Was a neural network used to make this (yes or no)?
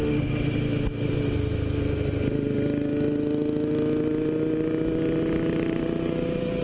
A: no